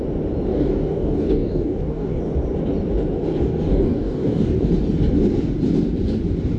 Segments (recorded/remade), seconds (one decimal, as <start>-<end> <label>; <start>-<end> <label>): 0.0-0.5 recorded; 0.5-2.2 remade; 2.2-3.4 recorded; 3.4-4.7 remade; 4.7-6.6 recorded